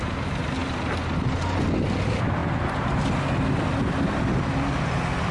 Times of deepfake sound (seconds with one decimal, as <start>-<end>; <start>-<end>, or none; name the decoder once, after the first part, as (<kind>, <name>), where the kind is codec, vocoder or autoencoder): none